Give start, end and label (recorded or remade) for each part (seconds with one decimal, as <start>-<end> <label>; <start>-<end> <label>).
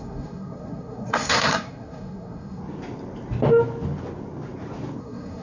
0.0-2.6 remade; 2.6-5.0 recorded; 5.0-5.4 remade